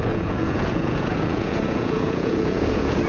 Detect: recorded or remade remade